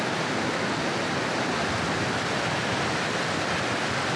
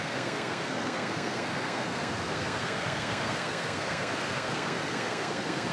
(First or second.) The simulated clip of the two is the second